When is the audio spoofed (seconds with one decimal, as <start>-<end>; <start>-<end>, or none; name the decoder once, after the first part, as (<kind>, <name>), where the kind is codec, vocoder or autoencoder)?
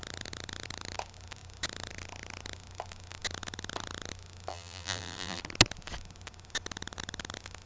4.5-5.4 (vocoder, BigVGAN v2)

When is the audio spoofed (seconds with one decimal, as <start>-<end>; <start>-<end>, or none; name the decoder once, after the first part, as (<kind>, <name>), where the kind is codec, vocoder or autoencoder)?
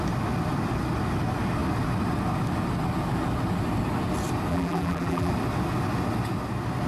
4.5-5.3 (vocoder, BigVGAN v2)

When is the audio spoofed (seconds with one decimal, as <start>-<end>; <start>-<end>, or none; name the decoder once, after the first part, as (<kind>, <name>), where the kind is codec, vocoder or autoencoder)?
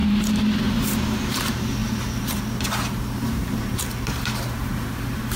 0.8-5.4 (vocoder, BigVGAN v2)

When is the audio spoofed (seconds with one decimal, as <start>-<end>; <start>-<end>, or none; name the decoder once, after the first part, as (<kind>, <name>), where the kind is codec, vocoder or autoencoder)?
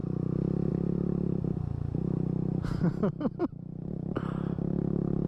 3.4-4.2 (vocoder, BigVGAN v2)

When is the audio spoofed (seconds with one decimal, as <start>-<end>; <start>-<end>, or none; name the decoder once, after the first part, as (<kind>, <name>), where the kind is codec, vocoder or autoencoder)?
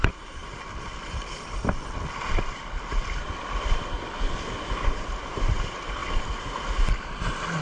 0.0-6.0 (vocoder, BigVGAN v2)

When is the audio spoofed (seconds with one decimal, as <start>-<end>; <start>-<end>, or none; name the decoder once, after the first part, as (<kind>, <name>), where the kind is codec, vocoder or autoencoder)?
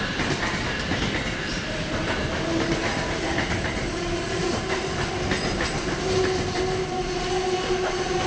none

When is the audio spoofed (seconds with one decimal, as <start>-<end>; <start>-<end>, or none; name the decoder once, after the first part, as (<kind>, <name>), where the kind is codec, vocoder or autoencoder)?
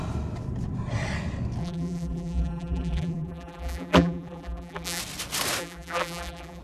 1.6-5.0 (vocoder, BigVGAN v2); 5.6-6.6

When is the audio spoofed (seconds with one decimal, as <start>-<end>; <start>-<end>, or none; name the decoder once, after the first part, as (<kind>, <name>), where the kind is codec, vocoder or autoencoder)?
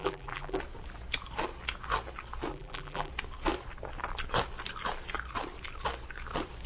0.0-0.6 (vocoder, BigVGAN v2); 2.5-3.1